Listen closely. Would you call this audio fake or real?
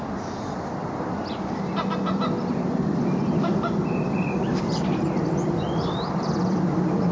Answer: fake